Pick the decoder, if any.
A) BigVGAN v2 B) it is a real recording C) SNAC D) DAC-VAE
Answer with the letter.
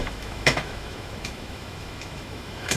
D